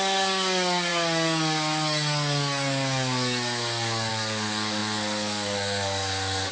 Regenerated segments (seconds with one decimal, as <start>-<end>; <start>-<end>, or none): 0.0-6.5